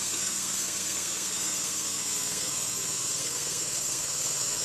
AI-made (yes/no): yes